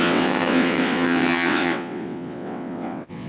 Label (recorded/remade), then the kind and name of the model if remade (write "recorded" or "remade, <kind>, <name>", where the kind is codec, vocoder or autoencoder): remade, vocoder, WaveNeXt